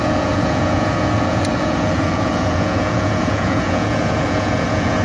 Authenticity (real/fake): fake